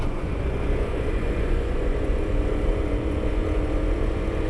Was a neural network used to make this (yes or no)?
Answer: yes